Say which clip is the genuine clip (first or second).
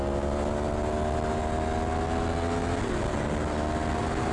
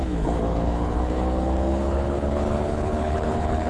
first